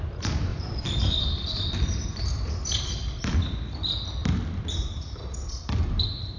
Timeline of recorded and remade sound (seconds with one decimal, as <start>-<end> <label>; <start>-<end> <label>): 0.0-0.5 recorded; 0.5-2.8 remade; 2.8-6.4 recorded